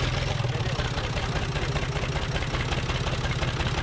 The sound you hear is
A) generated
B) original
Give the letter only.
B